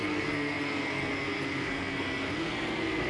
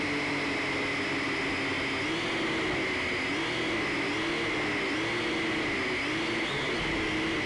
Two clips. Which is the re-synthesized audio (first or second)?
first